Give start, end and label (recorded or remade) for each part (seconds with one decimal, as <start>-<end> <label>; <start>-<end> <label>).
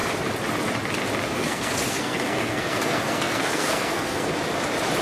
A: 0.0-1.3 recorded; 1.3-4.3 remade; 4.3-5.0 recorded